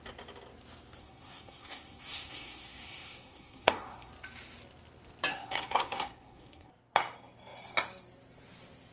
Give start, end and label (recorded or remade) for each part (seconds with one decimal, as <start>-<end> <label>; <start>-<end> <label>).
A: 0.0-1.0 recorded; 1.0-4.1 remade; 4.1-5.3 recorded; 5.3-6.7 remade; 6.7-8.9 recorded